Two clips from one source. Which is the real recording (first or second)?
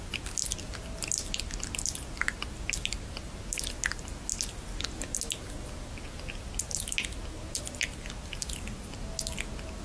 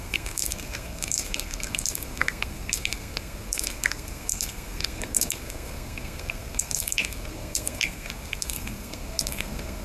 first